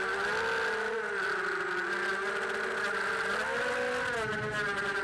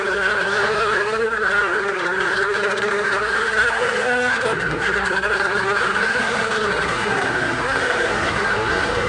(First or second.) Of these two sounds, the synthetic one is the second